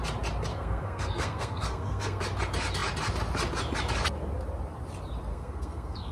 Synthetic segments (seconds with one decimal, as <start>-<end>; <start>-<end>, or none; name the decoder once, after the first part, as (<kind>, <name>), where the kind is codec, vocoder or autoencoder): 0.5-2.2 (codec, SNAC); 5.3-6.1